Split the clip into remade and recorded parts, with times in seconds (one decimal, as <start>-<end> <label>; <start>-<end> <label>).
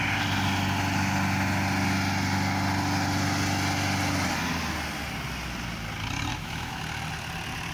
0.0-6.3 recorded; 6.3-6.8 remade; 6.8-7.7 recorded